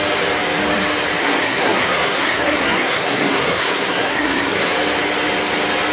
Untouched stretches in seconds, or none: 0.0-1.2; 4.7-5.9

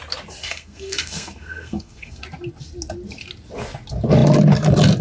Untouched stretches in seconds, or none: 0.0-0.4; 2.2-5.0

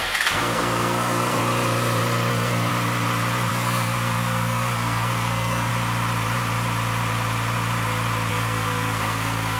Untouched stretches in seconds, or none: 1.4-2.3; 2.7-3.5; 5.7-8.3

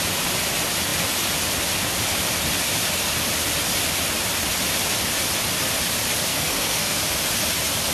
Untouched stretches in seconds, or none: 0.0-6.3; 7.0-7.9

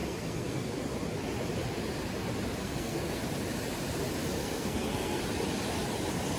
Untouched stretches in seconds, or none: 0.8-2.6; 3.2-4.4; 5.2-6.4